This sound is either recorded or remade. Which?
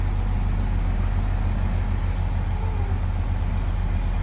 recorded